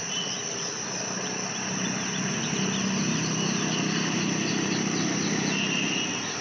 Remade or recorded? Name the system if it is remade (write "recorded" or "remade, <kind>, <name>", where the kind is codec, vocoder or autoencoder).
recorded